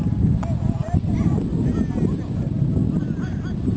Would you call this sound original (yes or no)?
yes